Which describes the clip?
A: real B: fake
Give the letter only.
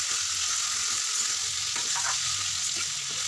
A